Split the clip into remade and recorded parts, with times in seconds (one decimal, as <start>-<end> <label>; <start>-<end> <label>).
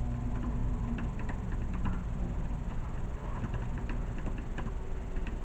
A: 0.0-0.6 recorded; 0.6-3.8 remade; 3.8-5.4 recorded